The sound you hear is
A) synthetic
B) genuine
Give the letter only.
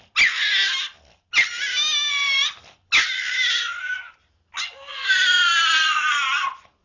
B